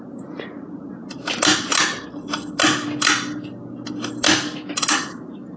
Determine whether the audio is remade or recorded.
recorded